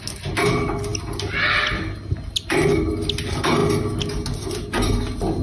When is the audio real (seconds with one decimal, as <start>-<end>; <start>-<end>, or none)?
0.0-5.4